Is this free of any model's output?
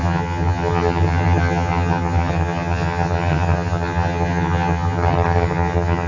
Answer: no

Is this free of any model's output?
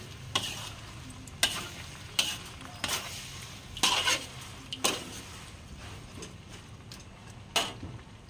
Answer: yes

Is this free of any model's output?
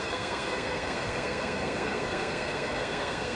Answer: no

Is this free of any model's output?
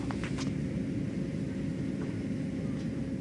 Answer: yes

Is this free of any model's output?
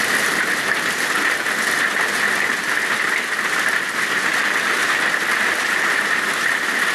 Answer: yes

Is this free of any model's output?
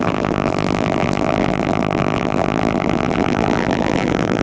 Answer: no